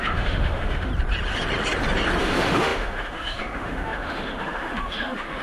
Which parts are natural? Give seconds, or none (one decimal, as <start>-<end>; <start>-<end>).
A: 0.9-2.2